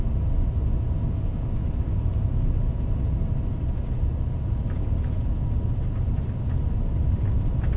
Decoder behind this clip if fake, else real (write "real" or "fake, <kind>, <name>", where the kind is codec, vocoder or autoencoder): real